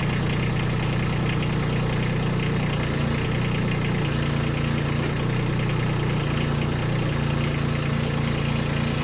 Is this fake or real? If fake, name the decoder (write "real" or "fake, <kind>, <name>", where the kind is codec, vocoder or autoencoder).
real